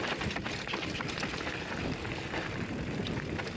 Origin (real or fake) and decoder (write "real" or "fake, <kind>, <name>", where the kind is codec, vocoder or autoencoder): real